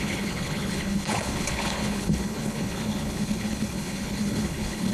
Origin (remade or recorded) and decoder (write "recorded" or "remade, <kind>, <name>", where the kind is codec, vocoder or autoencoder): remade, codec, HILCodec